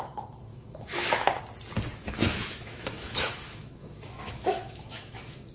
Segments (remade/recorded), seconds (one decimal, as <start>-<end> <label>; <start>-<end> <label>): 0.0-0.5 recorded; 0.5-1.4 remade; 1.4-2.0 recorded; 2.0-5.5 remade